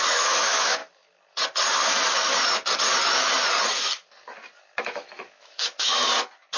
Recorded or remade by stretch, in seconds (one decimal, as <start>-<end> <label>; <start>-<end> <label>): 0.0-0.8 remade; 0.8-4.8 recorded; 4.8-5.9 remade; 5.9-6.6 recorded